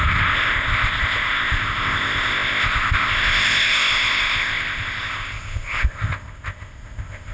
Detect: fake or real fake